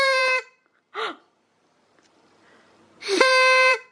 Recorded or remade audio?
remade